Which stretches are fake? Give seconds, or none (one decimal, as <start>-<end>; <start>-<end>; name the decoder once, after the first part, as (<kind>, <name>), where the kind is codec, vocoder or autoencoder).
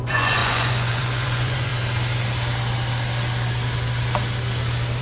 0.0-1.7 (vocoder, Vocos)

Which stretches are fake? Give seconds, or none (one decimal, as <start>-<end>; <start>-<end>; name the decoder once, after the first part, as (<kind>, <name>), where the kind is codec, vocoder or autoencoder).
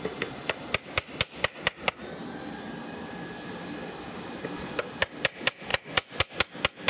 5.7-6.3 (vocoder, Vocos)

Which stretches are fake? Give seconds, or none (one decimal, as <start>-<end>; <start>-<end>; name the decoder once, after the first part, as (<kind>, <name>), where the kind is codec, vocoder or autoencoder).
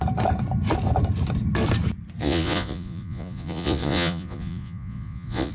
2.2-5.5 (vocoder, Vocos)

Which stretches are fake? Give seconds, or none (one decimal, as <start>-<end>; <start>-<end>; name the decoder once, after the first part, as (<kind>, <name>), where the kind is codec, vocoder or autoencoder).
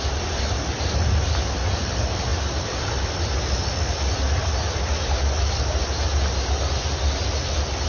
none